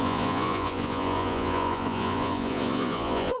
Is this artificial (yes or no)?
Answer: yes